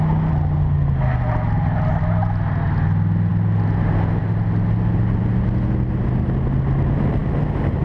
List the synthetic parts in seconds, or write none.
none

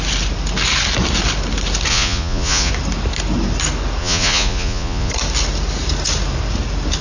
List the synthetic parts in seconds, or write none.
1.9-2.7 (vocoder, Vocos); 4.0-5.1